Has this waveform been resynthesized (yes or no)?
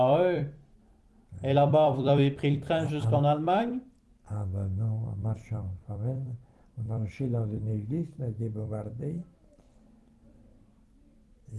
yes